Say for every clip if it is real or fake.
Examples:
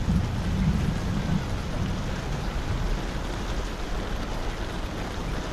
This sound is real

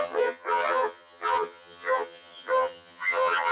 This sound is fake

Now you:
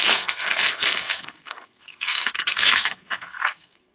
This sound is fake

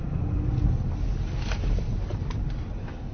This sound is real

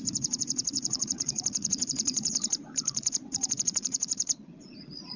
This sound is fake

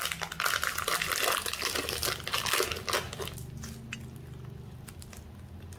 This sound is real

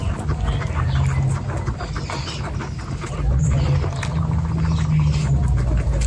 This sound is real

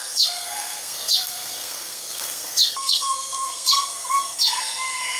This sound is fake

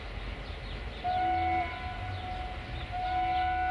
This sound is real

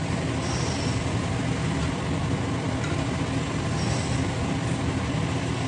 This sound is real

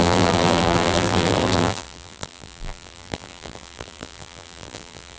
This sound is fake